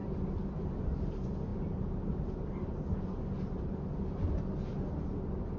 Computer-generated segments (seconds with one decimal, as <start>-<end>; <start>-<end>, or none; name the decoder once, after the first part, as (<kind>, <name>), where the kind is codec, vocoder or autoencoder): none